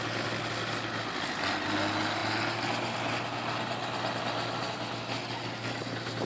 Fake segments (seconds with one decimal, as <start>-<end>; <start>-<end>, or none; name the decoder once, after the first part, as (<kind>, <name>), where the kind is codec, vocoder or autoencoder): none